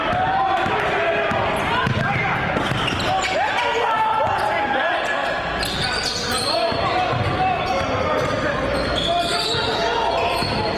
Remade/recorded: recorded